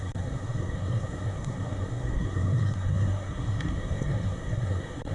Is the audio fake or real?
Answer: fake